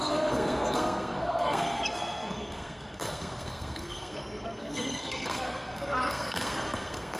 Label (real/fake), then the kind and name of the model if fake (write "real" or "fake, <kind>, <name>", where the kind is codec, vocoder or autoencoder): fake, codec, SNAC